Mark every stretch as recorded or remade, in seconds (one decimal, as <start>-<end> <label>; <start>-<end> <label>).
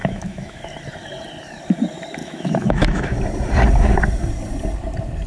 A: 0.0-0.6 remade; 0.6-2.2 recorded; 2.2-3.2 remade; 3.2-5.3 recorded